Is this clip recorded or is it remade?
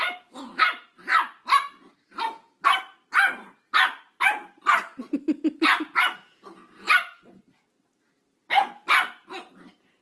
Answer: recorded